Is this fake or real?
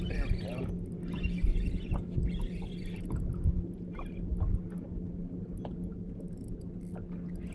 real